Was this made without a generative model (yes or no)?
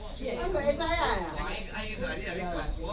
no